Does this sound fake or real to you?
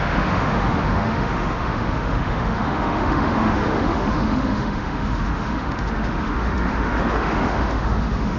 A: fake